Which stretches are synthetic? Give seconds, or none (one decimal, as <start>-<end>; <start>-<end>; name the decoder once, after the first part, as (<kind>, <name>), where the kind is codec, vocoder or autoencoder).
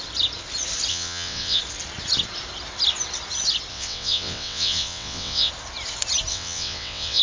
0.9-1.6 (vocoder, WaveNeXt); 3.7-5.5; 6.3-7.2